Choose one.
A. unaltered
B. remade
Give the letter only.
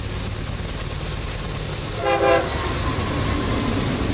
A